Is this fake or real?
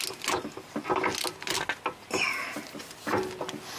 real